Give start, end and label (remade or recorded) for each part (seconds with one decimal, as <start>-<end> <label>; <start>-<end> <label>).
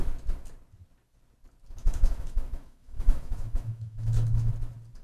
0.0-1.8 recorded; 1.8-4.5 remade; 4.5-5.0 recorded